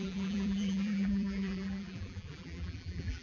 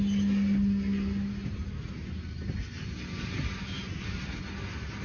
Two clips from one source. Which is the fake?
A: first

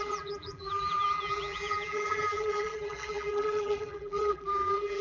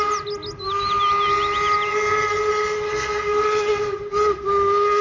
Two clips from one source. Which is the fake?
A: first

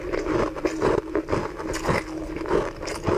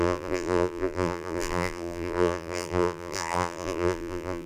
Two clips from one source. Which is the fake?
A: second